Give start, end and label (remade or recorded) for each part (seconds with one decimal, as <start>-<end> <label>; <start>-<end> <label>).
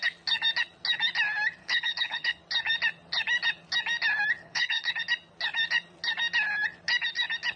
0.0-1.6 recorded; 1.6-2.4 remade; 2.4-4.4 recorded; 4.4-4.9 remade; 4.9-7.6 recorded